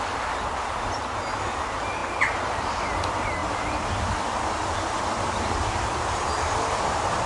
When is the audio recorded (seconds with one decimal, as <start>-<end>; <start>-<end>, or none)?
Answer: 0.0-3.4; 6.7-7.3